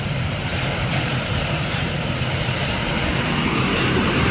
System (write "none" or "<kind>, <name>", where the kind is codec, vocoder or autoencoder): vocoder, BigVGAN v2